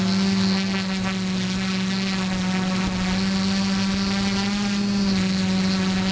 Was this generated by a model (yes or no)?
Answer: no